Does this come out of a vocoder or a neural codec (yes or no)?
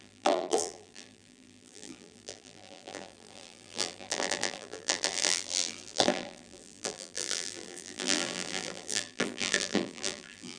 yes